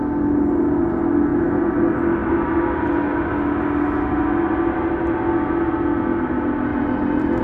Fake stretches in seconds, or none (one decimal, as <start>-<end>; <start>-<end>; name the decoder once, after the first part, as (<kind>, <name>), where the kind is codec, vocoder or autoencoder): 6.7-7.4 (vocoder, BigVGAN v2)